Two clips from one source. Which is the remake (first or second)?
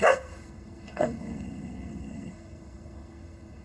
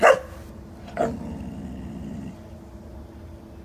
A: first